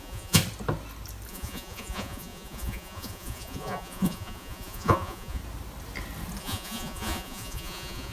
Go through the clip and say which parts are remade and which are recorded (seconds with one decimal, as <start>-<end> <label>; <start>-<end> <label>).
0.0-0.4 remade; 0.4-1.3 recorded; 1.3-5.4 remade; 5.4-6.4 recorded; 6.4-8.1 remade